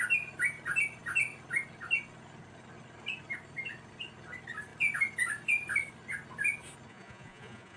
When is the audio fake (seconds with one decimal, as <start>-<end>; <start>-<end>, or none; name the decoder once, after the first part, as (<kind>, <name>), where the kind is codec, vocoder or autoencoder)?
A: 6.9-7.8 (vocoder, Vocos)